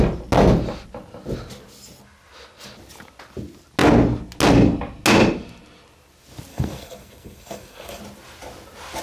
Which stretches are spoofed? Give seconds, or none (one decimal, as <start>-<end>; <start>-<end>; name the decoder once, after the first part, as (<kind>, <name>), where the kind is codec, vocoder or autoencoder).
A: 6.5-8.0 (codec, SNAC)